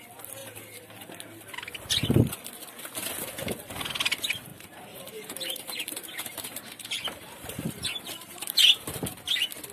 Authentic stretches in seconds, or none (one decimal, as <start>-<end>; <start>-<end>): 0.0-4.5; 8.9-9.7